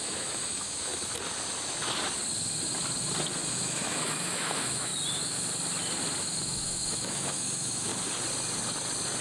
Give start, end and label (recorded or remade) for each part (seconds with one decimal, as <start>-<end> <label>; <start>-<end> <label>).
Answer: 0.0-0.9 remade; 0.9-3.5 recorded; 3.5-4.9 remade; 4.9-6.2 recorded; 6.2-7.9 remade; 7.9-9.2 recorded